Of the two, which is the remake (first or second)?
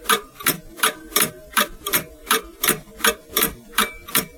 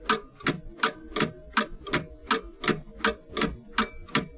first